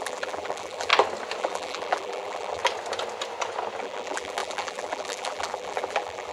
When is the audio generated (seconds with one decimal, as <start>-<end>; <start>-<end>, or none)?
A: 0.0-0.9; 1.4-2.6; 3.8-6.3